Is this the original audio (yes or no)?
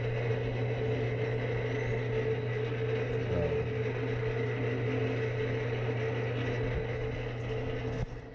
yes